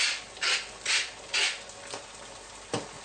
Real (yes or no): yes